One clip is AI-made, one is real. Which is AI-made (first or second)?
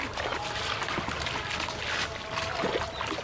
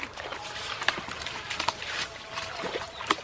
second